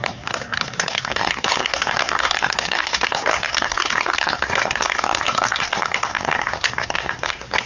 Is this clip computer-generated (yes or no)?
yes